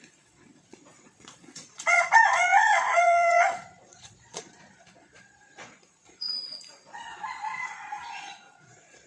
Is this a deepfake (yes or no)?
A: yes